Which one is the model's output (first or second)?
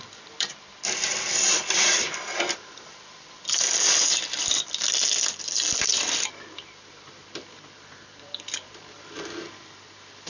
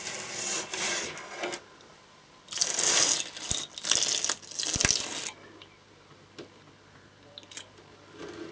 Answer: first